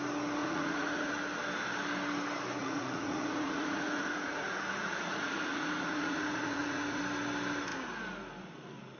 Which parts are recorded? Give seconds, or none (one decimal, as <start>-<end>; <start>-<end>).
0.0-0.4; 1.1-2.6; 7.0-9.0